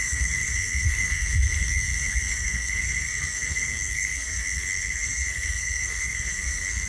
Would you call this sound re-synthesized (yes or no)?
yes